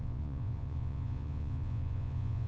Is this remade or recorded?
remade